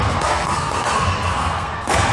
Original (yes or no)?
no